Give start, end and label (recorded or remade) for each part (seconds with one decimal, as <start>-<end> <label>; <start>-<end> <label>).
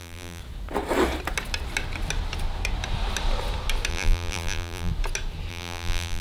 0.0-0.4 remade; 0.4-3.9 recorded; 3.9-4.9 remade; 4.9-5.5 recorded; 5.5-6.2 remade